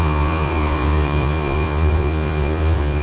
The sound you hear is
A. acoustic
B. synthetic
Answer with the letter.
B